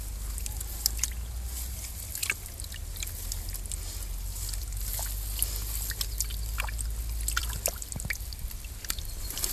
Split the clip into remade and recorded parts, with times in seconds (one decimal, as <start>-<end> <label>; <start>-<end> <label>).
0.0-9.5 recorded